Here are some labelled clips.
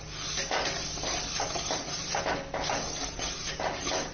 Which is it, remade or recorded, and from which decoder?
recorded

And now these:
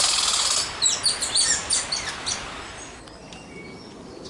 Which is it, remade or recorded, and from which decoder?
recorded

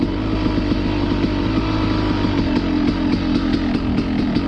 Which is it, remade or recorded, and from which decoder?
recorded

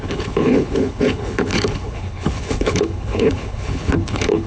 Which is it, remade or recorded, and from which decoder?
remade, codec, HILCodec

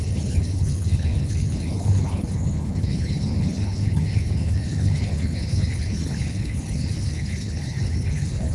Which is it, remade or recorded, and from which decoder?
remade, codec, HILCodec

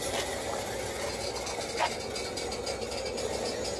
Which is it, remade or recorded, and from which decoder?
recorded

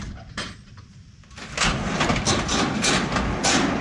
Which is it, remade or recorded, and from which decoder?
recorded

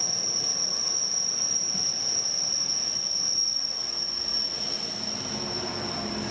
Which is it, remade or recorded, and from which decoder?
recorded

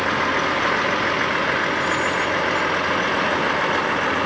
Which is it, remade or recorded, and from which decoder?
recorded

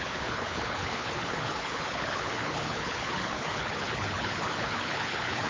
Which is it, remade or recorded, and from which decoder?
remade, codec, HILCodec